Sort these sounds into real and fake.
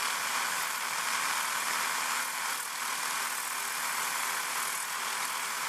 real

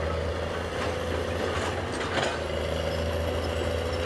real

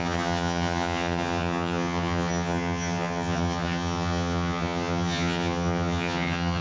fake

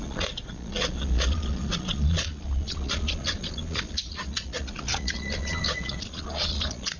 fake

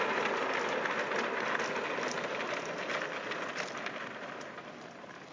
real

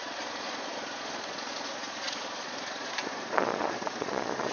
fake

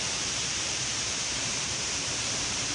fake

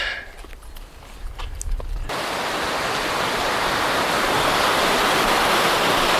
real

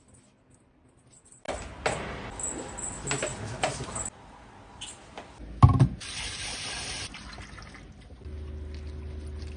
real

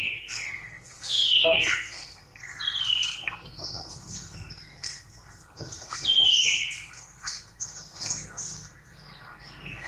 fake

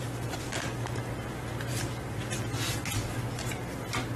real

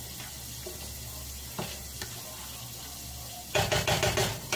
real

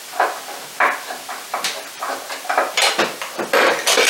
real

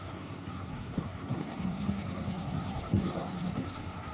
fake